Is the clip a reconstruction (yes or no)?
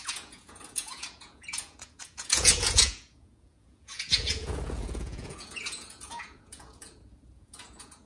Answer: yes